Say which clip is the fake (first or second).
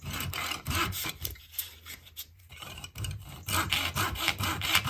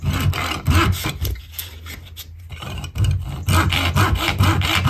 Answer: first